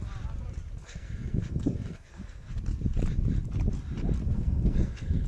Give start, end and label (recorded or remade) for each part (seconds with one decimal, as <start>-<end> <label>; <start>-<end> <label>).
0.0-0.8 recorded; 0.8-2.6 remade; 2.6-4.2 recorded; 4.2-5.3 remade